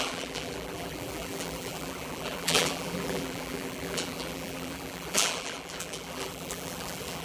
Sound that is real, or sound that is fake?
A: fake